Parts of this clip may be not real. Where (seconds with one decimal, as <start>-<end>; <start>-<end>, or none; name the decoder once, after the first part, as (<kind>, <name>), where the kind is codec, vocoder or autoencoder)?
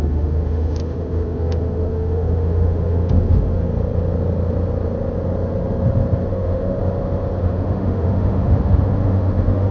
0.0-3.7 (autoencoder, DAC-VAE); 6.3-6.8; 7.4-9.7